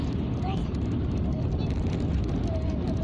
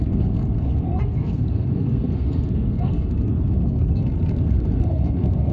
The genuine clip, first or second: first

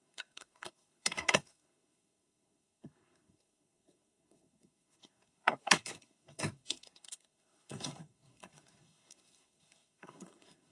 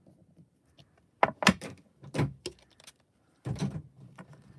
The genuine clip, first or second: second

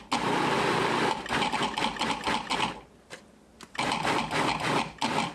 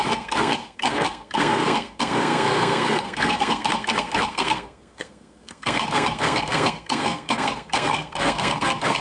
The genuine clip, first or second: first